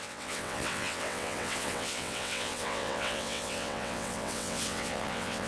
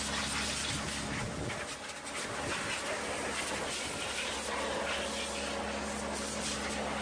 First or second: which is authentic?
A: second